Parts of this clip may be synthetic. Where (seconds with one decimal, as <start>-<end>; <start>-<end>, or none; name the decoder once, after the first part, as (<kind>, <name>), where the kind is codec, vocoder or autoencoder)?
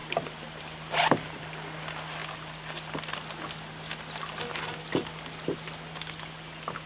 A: none